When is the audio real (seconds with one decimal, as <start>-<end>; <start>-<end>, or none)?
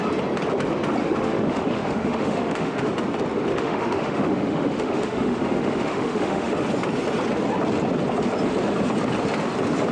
0.0-1.0; 2.9-3.5; 6.5-9.9